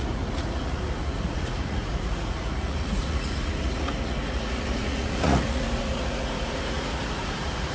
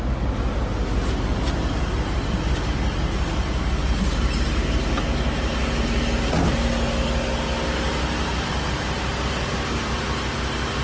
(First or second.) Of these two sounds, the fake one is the first